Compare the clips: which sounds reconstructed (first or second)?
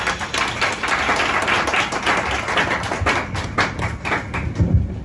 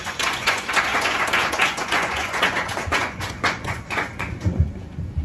second